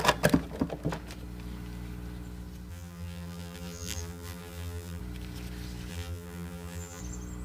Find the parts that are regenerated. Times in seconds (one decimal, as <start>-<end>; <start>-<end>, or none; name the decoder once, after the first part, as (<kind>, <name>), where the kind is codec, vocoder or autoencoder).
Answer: 2.7-5.0 (vocoder, BigVGAN v2); 5.9-7.0